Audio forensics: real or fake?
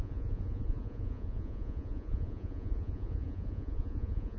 fake